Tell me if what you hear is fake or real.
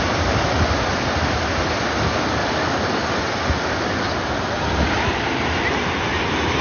real